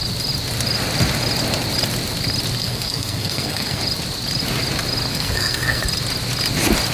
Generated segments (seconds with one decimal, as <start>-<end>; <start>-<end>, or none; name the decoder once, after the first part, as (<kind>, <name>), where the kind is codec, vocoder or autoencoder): 2.6-3.8 (codec, SNAC); 5.1-5.8